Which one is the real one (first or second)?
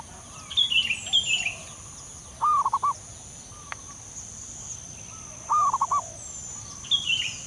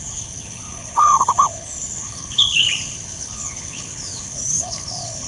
first